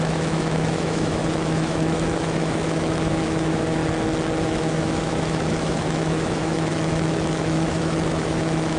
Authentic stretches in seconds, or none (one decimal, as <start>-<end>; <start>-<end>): 3.8-4.4